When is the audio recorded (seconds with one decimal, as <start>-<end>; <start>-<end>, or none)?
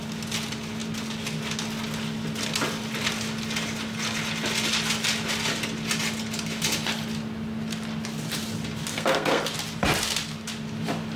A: 0.0-8.9; 9.4-11.2